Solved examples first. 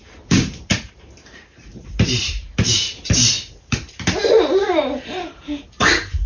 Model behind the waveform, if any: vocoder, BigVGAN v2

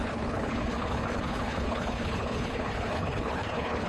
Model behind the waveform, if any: codec, HILCodec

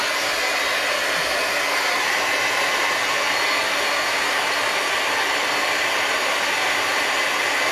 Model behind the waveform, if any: none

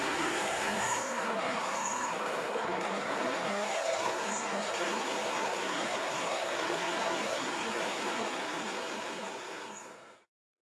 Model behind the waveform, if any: codec, SNAC